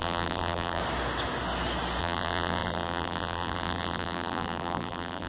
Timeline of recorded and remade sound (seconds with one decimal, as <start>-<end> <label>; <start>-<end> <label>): 0.0-0.8 remade; 0.8-2.0 recorded; 2.0-5.3 remade